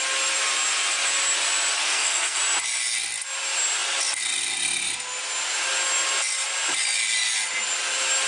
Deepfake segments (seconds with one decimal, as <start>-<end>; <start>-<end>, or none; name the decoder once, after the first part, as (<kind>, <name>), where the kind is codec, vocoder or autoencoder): 1.8-2.4 (codec, SNAC)